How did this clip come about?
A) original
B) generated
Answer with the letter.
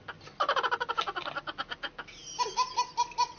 A